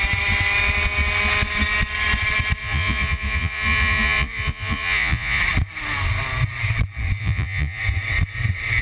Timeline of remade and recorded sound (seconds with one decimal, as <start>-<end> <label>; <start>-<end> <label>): 0.0-2.6 recorded; 2.6-5.4 remade; 5.4-7.2 recorded; 7.2-7.8 remade; 7.8-8.8 recorded